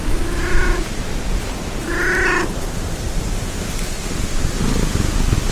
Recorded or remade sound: recorded